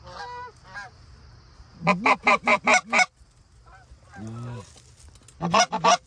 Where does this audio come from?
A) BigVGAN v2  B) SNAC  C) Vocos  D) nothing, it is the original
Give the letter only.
D